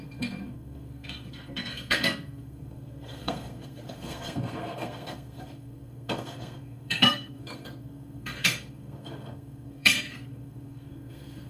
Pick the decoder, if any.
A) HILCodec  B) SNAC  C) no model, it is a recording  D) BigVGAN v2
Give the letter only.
B